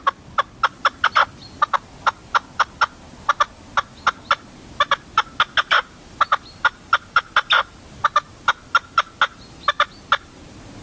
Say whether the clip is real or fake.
real